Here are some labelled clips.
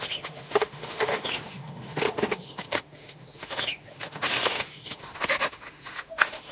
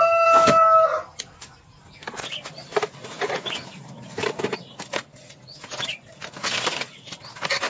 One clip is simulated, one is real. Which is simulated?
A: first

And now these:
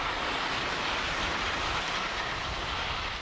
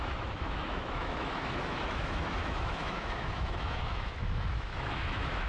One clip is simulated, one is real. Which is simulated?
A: second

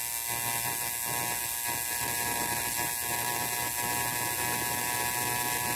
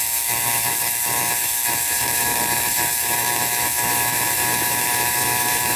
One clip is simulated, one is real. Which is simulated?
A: second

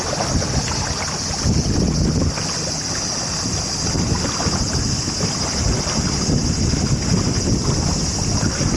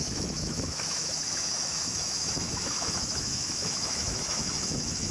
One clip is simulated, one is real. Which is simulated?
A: second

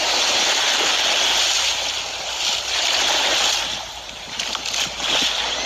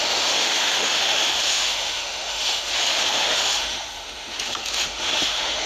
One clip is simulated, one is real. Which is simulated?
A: second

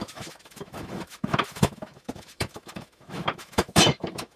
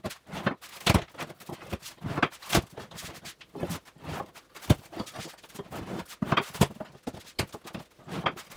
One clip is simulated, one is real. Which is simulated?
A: first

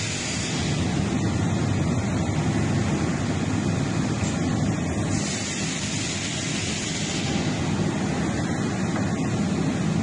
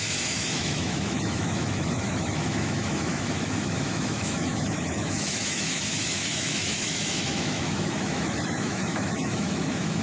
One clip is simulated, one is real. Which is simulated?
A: second